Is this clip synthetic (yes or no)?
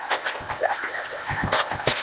yes